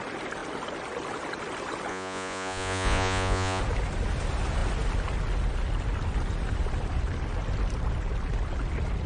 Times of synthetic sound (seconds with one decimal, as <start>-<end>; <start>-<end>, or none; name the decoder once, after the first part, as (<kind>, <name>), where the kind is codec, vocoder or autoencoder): 1.9-3.6 (vocoder, Vocos)

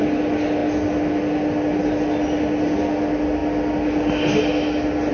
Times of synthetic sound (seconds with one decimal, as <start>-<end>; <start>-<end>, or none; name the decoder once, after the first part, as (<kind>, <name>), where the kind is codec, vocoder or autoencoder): none

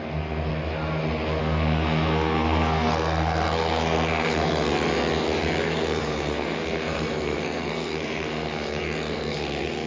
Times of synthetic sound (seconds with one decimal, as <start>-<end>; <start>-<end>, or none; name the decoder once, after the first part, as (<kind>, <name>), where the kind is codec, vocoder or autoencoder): 0.0-0.5 (codec, SNAC); 1.4-4.7; 5.6-9.9

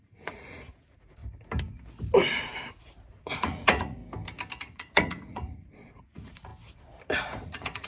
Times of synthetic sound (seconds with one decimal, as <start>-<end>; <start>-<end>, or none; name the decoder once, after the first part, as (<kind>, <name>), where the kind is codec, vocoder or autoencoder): 0.0-1.2 (vocoder, Vocos); 3.1-4.0; 4.6-6.5; 7.4-7.9

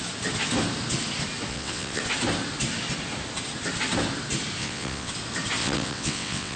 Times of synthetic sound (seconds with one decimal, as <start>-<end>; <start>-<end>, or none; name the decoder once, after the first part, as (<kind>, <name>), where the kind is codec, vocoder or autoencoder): 1.5-2.0 (vocoder, WaveNeXt); 4.6-5.1; 5.6-6.6